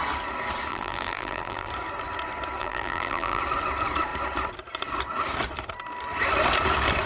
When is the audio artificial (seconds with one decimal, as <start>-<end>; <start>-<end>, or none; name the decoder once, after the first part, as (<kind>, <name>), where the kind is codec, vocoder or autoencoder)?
0.7-1.7 (vocoder, BigVGAN v2); 2.6-3.4